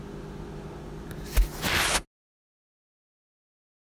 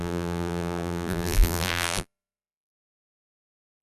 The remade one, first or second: second